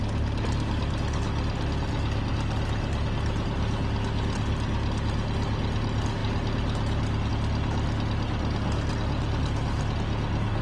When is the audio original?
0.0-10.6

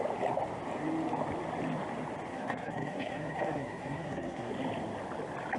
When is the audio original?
0.0-2.3; 4.5-5.6

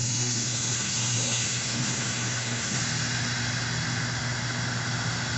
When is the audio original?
2.8-5.4

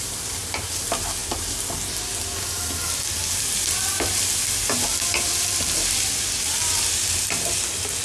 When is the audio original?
0.0-8.0

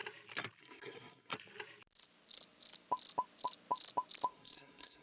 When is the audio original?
0.0-0.6; 1.3-4.3